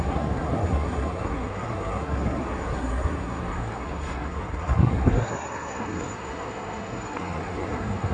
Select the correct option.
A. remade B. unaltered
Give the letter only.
A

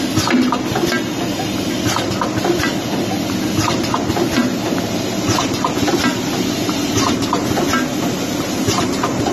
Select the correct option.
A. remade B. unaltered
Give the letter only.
B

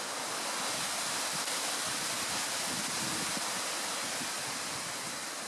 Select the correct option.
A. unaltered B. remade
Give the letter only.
A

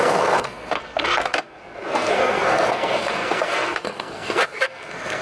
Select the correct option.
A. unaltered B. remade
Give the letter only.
B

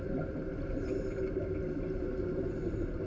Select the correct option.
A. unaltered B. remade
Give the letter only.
A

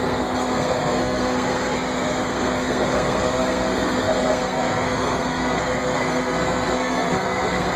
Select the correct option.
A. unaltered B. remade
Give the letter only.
B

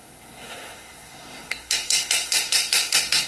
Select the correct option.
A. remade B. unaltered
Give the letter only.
A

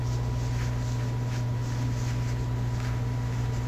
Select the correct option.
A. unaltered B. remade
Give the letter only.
A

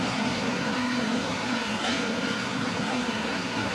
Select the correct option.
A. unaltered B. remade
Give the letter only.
B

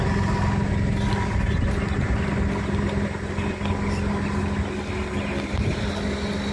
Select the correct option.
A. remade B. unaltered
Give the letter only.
B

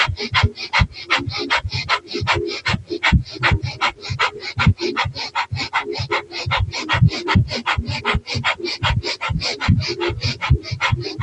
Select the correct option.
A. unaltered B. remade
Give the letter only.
A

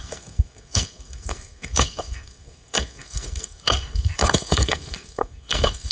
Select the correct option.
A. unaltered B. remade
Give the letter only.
B